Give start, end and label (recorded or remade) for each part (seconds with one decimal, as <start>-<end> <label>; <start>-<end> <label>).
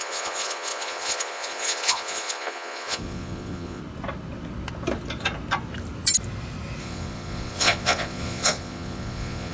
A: 0.0-3.8 remade; 3.8-6.8 recorded; 6.8-9.5 remade